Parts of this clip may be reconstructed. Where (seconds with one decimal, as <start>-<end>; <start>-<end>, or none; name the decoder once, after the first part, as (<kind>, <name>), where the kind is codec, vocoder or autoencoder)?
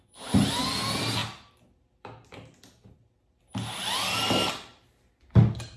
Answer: none